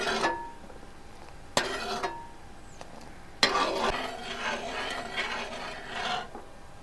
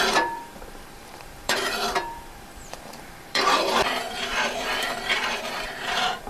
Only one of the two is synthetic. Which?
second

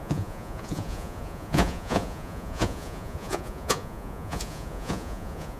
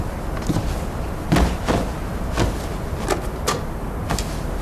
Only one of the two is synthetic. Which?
first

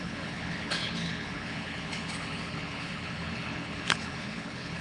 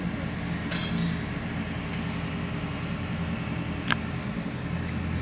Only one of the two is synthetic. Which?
first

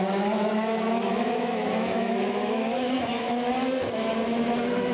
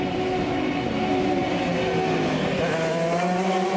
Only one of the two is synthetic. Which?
first